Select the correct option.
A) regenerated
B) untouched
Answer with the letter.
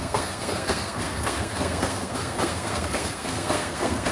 A